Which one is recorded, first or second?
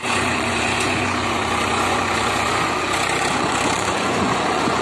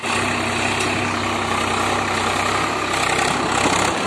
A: second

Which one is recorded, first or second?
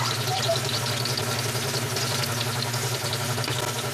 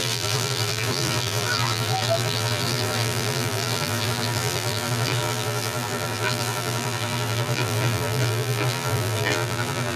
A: first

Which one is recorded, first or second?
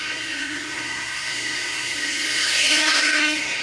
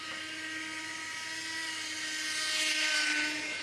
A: second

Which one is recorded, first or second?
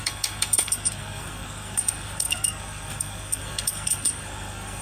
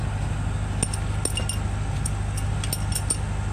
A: second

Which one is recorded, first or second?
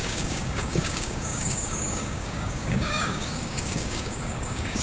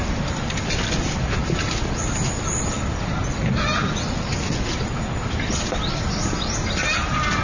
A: second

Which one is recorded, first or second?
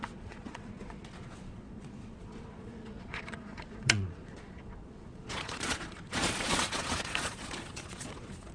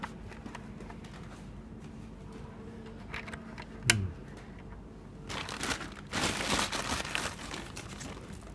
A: second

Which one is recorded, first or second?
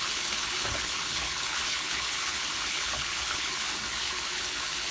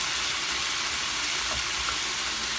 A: second